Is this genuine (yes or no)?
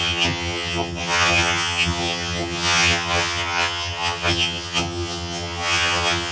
no